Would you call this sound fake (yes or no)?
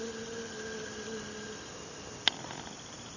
no